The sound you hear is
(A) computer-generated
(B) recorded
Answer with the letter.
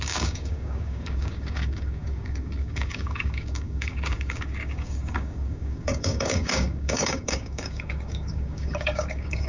A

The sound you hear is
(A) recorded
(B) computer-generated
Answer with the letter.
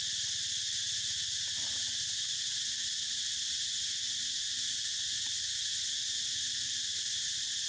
A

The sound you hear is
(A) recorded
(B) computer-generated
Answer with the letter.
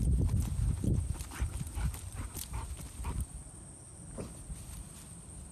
A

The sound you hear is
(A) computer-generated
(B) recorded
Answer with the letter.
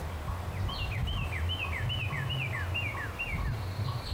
B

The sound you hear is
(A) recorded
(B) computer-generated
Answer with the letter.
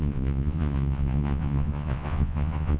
B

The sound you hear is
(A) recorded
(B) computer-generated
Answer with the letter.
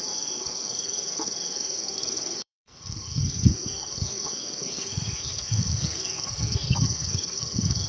B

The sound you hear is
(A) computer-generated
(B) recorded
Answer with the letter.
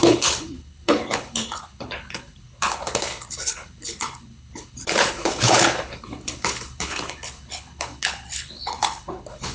A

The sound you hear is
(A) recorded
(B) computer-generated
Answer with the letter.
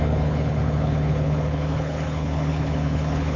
B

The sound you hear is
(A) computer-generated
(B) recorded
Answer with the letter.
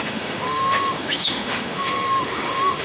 A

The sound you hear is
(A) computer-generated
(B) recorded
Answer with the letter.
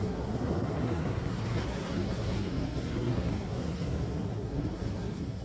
A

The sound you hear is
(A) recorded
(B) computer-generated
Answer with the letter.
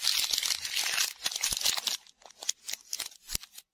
A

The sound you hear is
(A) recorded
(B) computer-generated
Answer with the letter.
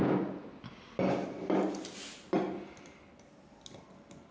A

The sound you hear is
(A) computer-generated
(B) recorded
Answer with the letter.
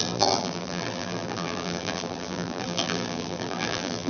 A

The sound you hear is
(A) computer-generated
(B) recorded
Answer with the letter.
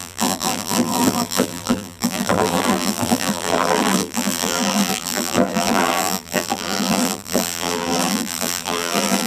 A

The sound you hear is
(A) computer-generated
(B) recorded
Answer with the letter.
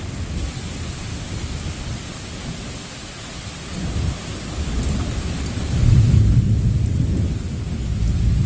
B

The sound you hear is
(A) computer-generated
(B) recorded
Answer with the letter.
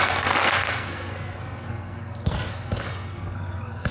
A